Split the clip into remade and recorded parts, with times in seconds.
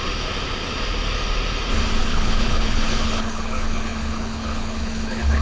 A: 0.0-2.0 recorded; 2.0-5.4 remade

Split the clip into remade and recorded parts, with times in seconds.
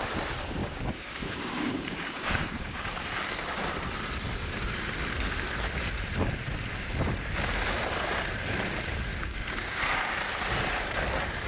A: 0.0-0.6 recorded; 0.6-2.9 remade; 2.9-9.1 recorded; 9.1-9.8 remade; 9.8-11.5 recorded